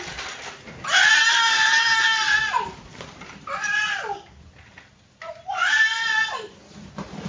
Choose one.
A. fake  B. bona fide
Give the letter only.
B